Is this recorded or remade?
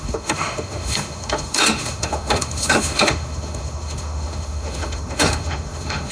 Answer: remade